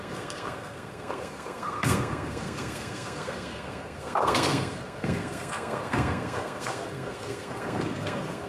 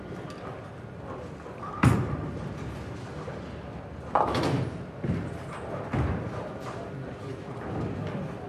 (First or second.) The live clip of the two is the second